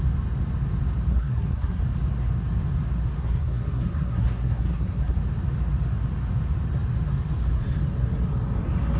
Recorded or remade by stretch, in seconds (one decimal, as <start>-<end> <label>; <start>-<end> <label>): 0.0-1.1 recorded; 1.1-1.8 remade; 1.8-3.2 recorded; 3.2-5.2 remade; 5.2-9.0 recorded